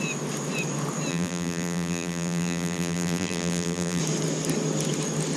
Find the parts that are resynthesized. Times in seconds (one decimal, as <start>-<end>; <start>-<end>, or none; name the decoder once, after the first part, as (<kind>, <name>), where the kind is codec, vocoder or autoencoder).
1.1-4.0 (vocoder, BigVGAN v2)